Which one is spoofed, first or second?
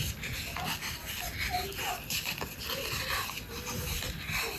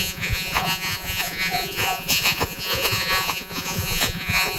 second